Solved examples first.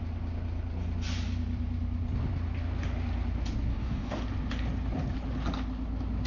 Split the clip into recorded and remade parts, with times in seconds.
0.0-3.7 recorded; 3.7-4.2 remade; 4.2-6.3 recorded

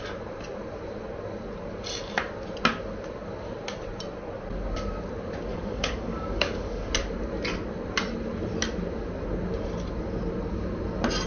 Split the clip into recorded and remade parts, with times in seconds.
0.0-5.5 recorded; 5.5-6.9 remade; 6.9-11.3 recorded

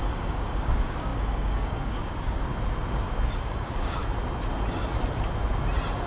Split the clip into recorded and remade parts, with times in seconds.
0.0-2.5 remade; 2.5-3.5 recorded; 3.5-4.0 remade; 4.0-6.1 recorded

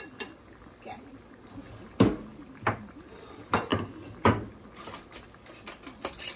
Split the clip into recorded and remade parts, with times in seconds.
0.0-6.4 recorded

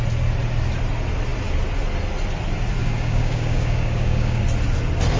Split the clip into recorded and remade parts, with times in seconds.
0.0-2.8 recorded; 2.8-4.4 remade; 4.4-5.2 recorded

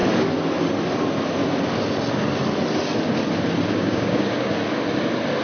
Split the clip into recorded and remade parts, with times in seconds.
0.0-3.8 recorded; 3.8-4.5 remade; 4.5-5.4 recorded